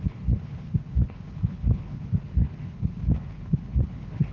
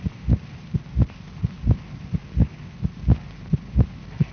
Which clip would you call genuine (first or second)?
second